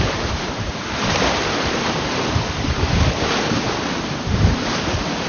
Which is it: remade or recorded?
remade